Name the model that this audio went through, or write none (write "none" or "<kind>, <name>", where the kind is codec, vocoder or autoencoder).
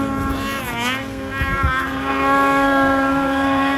codec, SNAC